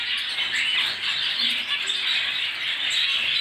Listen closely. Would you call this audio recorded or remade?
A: recorded